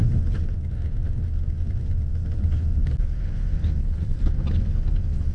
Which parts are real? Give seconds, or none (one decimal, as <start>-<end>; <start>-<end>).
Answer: 0.0-3.8; 4.3-5.3